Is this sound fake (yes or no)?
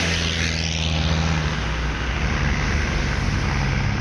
no